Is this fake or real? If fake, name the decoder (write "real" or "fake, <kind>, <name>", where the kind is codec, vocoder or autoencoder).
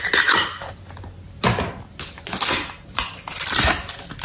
real